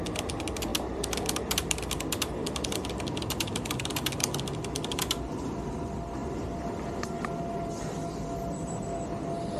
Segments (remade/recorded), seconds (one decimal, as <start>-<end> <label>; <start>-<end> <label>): 0.0-9.6 recorded